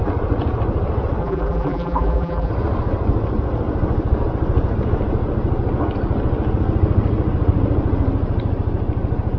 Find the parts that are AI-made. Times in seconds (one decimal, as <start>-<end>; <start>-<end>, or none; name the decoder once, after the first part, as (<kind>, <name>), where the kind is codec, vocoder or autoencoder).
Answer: 1.2-2.5 (vocoder, BigVGAN v2)